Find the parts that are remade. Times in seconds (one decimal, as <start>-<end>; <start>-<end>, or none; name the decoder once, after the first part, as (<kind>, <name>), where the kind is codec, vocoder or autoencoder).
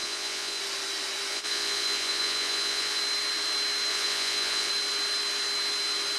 0.0-0.6 (vocoder, Vocos); 1.3-3.0; 3.9-4.7